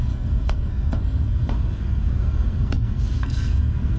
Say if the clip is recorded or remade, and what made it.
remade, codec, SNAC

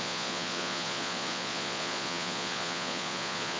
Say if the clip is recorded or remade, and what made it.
remade, vocoder, Vocos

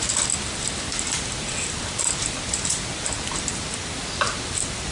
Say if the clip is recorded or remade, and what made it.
remade, vocoder, BigVGAN v2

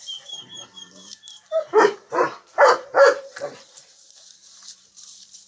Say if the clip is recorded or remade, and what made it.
remade, vocoder, BigVGAN v2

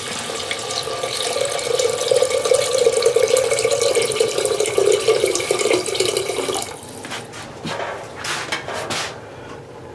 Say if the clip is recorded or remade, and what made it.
remade, vocoder, BigVGAN v2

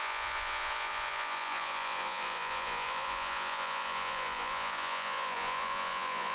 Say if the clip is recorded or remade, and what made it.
remade, vocoder, Vocos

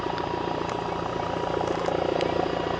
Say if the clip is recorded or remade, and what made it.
recorded